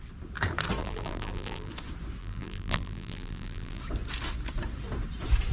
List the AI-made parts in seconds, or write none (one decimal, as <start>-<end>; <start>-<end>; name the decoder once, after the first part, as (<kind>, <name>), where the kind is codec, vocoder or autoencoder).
0.8-1.7 (vocoder, BigVGAN v2); 2.2-3.8